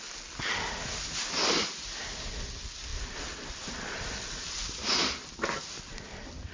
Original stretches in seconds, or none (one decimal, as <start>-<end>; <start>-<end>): 0.0-6.5